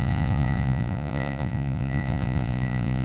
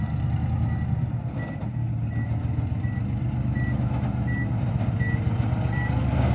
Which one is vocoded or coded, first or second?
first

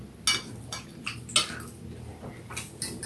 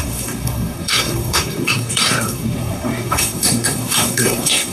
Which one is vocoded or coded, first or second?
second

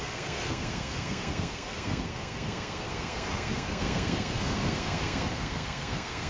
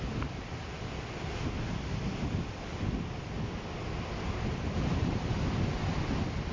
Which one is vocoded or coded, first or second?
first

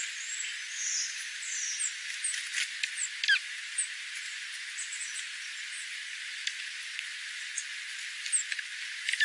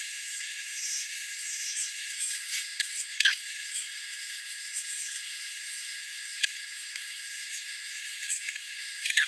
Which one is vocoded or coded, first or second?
second